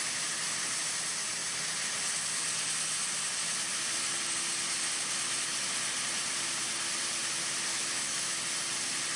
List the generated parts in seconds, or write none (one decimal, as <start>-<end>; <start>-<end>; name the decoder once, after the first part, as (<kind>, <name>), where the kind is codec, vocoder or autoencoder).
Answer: 7.7-8.4 (autoencoder, DAC-VAE)